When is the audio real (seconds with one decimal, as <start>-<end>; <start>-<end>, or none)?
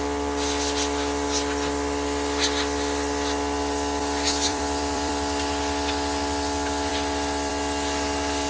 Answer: 0.0-4.5; 5.1-8.5